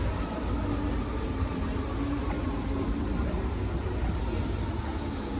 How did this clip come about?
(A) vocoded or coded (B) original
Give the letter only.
B